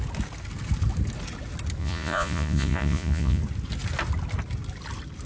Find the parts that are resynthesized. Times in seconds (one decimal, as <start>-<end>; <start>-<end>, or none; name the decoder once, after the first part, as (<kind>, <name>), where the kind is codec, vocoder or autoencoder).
1.8-3.4 (vocoder, Vocos)